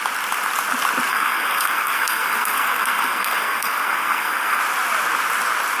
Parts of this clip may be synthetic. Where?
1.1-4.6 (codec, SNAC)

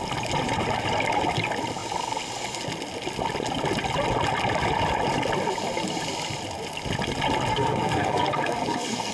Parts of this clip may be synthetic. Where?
7.5-9.1 (codec, SNAC)

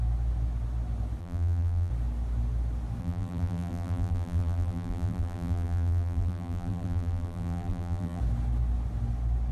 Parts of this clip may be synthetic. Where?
1.2-1.9 (vocoder, BigVGAN v2); 3.0-8.2

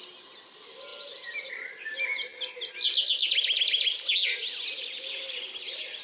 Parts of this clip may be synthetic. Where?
0.9-1.5 (vocoder, BigVGAN v2)

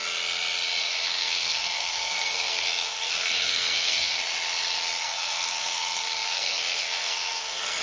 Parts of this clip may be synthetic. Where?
0.8-4.2 (codec, SNAC); 5.0-7.8

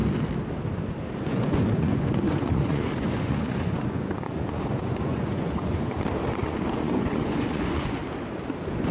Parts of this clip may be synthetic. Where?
1.3-5.8 (vocoder, Vocos); 6.4-8.0

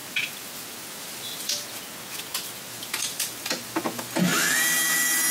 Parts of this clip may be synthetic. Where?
none